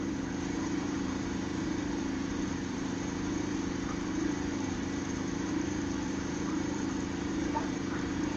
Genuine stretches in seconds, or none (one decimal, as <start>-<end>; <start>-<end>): none

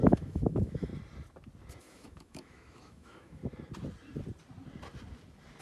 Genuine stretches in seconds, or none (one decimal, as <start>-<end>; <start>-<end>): 0.9-1.8; 3.4-5.6

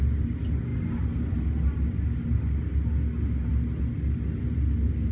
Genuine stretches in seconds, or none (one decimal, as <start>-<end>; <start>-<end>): 0.0-5.1

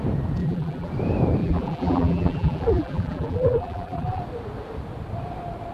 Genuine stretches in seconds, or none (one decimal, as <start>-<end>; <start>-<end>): 0.0-0.4; 0.9-1.4; 4.2-5.7

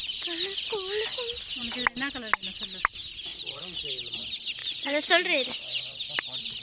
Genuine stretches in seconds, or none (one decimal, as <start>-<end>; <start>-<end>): 0.0-3.3; 3.8-4.6; 5.2-6.6

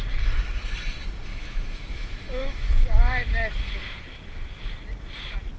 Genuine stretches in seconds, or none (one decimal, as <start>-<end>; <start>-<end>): 0.0-1.3; 3.8-5.6

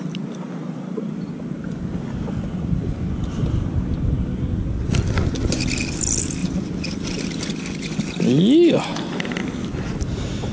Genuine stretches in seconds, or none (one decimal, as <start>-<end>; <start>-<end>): 0.0-10.5